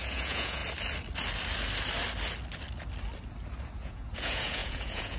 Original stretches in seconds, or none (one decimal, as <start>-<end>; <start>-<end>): 0.6-3.7